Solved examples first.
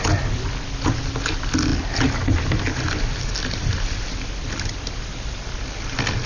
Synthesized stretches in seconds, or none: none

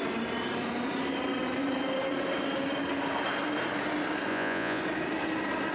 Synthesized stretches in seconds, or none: 4.3-4.8 (vocoder, Vocos)

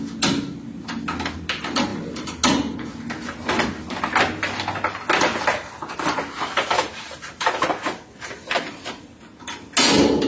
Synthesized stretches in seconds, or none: none

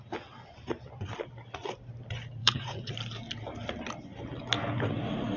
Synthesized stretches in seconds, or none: 2.4-2.9 (vocoder, Vocos)

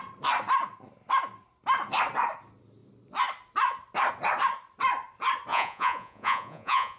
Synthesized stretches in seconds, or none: 5.5-7.0 (vocoder, Vocos)